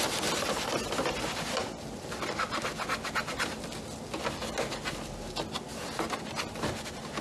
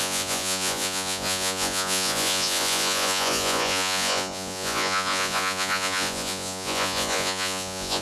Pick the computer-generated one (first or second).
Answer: second